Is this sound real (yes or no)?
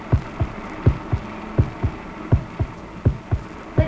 yes